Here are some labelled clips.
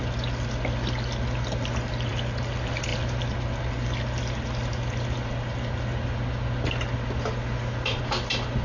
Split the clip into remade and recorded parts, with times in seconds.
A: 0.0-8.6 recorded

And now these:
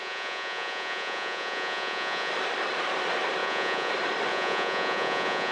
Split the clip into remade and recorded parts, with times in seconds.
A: 0.0-2.3 remade; 2.3-3.4 recorded; 3.4-3.9 remade; 3.9-4.3 recorded; 4.3-5.5 remade

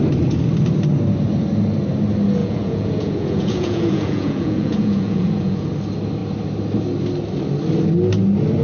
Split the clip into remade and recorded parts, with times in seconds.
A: 0.0-2.4 recorded; 2.4-5.7 remade; 5.7-8.6 recorded

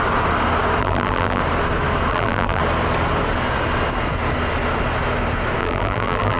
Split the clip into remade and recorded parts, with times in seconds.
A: 0.0-0.8 recorded; 0.8-1.4 remade; 1.4-2.1 recorded; 2.1-2.6 remade; 2.6-5.6 recorded; 5.6-6.4 remade